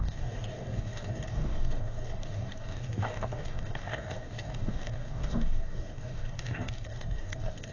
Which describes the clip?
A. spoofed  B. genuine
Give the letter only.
A